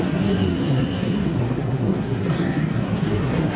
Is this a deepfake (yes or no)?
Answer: yes